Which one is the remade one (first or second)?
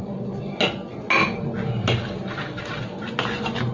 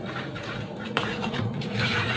second